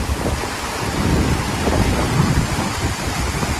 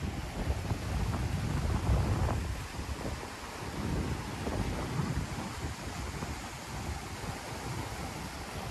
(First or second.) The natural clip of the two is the second